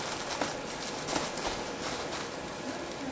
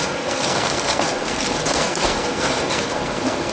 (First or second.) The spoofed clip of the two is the second